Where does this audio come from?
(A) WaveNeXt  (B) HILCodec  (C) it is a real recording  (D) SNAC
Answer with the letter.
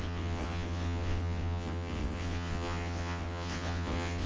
A